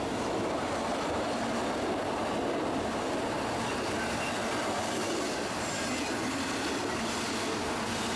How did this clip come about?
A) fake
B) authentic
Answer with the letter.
B